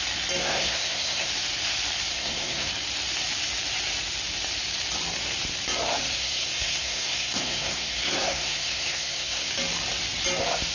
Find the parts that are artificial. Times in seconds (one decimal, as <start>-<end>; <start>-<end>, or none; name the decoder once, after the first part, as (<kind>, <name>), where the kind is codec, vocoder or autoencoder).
0.4-1.3 (codec, SNAC); 2.1-2.7; 6.2-9.5